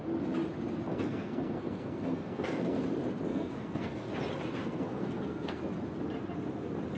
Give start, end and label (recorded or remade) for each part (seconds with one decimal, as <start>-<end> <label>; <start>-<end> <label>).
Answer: 0.0-0.9 recorded; 0.9-2.8 remade; 2.8-3.3 recorded; 3.3-4.1 remade; 4.1-4.6 recorded; 4.6-5.6 remade; 5.6-7.0 recorded